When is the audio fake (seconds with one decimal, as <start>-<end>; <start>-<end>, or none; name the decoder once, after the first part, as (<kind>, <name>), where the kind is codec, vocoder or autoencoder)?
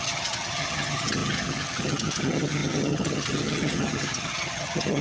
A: 0.0-5.0 (vocoder, HiFi-GAN)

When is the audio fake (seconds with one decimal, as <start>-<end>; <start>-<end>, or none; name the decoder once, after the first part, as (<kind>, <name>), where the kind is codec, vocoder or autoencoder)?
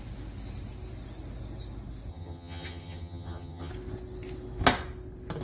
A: 2.1-3.7 (vocoder, HiFi-GAN)